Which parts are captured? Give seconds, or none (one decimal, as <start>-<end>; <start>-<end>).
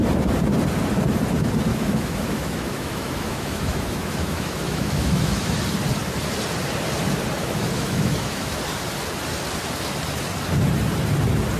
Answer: 0.0-1.7; 5.6-7.4; 8.6-11.6